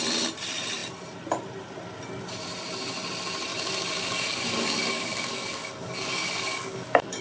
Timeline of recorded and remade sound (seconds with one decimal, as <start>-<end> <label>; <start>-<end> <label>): 0.0-3.5 recorded; 3.5-7.2 remade

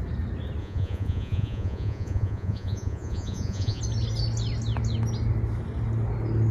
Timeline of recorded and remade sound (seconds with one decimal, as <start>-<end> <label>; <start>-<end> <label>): 0.0-0.6 recorded; 0.6-3.8 remade; 3.8-6.5 recorded

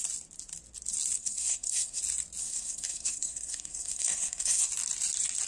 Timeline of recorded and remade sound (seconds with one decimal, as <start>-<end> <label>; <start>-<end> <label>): 0.0-1.2 recorded; 1.2-2.0 remade; 2.0-2.4 recorded; 2.4-4.7 remade; 4.7-5.5 recorded

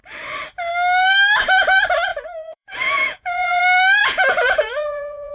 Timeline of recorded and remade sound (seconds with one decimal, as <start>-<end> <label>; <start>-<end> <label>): 0.0-2.1 recorded; 2.1-3.6 remade; 3.6-4.0 recorded; 4.0-5.3 remade

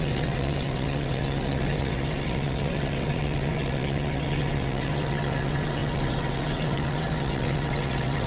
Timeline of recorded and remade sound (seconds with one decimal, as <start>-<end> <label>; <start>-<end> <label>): 0.0-8.3 remade